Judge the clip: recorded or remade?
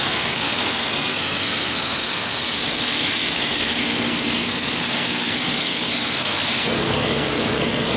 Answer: remade